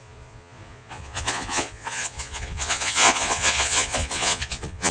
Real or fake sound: fake